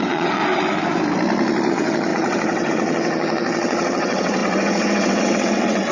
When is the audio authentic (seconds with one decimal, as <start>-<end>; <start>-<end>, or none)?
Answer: 0.4-1.7